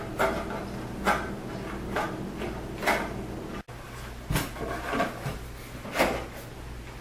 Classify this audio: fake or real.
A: real